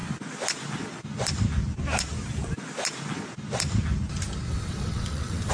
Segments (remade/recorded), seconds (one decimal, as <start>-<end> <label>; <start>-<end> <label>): 0.0-4.5 recorded; 4.5-5.5 remade